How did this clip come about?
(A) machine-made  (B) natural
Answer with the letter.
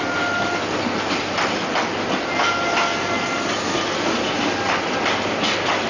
B